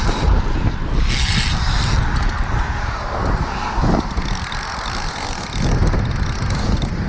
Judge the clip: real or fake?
real